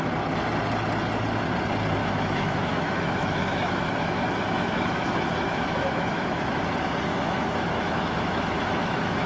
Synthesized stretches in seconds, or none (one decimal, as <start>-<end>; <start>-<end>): 2.0-6.6; 7.1-9.3